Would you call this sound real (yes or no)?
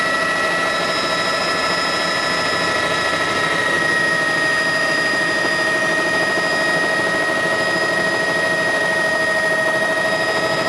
yes